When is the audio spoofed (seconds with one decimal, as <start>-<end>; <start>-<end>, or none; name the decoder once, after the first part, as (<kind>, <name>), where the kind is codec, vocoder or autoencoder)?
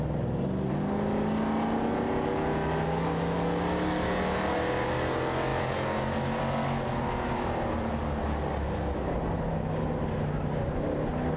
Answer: none